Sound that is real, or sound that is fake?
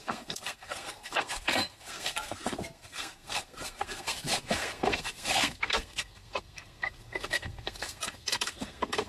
fake